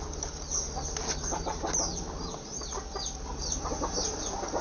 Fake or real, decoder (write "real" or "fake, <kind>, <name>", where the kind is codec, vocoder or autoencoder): real